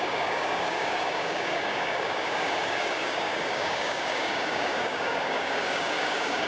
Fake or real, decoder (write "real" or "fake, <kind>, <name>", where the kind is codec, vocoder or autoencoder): fake, codec, DAC